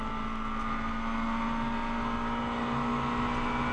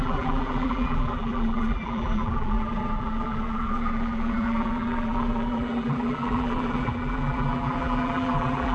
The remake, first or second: second